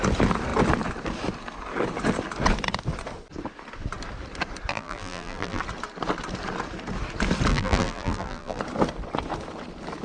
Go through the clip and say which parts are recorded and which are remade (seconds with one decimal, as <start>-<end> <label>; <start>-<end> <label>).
0.0-4.7 recorded; 4.7-5.6 remade; 5.6-7.5 recorded; 7.5-8.6 remade; 8.6-10.0 recorded